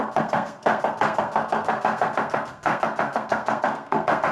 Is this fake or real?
fake